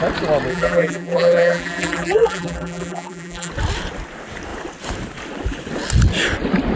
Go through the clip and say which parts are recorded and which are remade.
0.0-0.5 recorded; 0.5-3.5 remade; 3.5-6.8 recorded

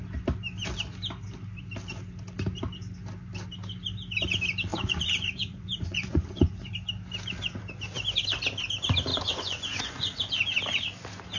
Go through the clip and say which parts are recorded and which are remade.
0.0-4.7 recorded; 4.7-6.7 remade; 6.7-9.1 recorded; 9.1-10.3 remade; 10.3-11.4 recorded

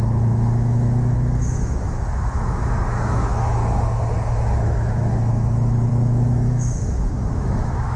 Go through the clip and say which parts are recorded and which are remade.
0.0-3.6 remade; 3.6-4.3 recorded; 4.3-8.0 remade

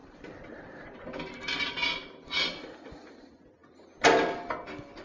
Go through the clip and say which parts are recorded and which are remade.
0.0-1.0 remade; 1.0-5.0 recorded

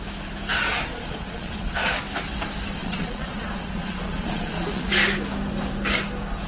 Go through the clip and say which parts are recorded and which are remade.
0.0-0.9 recorded; 0.9-2.0 remade; 2.0-2.8 recorded; 2.8-4.9 remade; 4.9-6.5 recorded

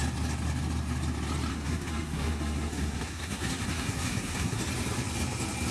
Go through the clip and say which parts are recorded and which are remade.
0.0-1.5 recorded; 1.5-4.6 remade; 4.6-5.7 recorded

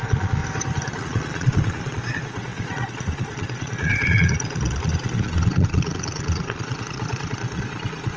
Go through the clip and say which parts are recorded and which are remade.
0.0-0.4 remade; 0.4-1.0 recorded; 1.0-8.2 remade

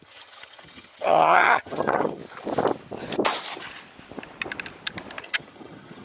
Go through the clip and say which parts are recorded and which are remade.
0.0-2.2 remade; 2.2-5.2 recorded; 5.2-6.0 remade